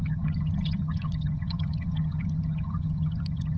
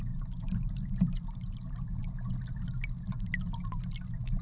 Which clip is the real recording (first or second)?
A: second